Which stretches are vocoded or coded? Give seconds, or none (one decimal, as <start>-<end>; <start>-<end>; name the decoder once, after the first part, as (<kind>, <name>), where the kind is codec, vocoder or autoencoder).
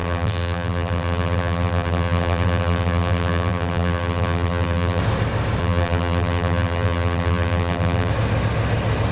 0.0-5.0 (vocoder, BigVGAN v2); 5.6-8.1